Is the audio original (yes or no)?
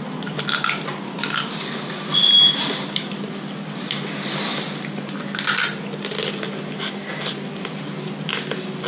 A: yes